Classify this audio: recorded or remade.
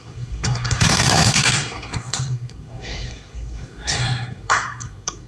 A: remade